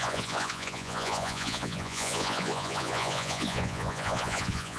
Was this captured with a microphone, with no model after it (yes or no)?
no